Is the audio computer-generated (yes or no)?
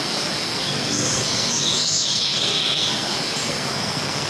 yes